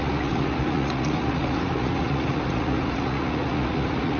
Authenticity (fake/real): fake